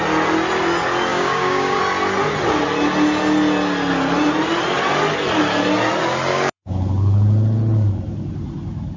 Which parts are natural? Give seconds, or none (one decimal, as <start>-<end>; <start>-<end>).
0.0-1.1; 1.8-6.3; 6.8-9.0